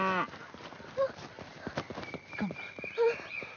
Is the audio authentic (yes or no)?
yes